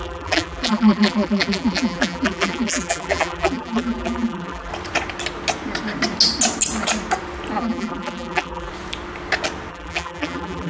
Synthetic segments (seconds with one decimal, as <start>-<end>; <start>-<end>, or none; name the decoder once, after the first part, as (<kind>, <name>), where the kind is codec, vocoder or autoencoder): 0.0-4.7 (vocoder, BigVGAN v2); 7.6-8.7; 9.7-10.7